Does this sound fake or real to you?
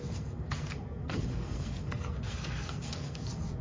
fake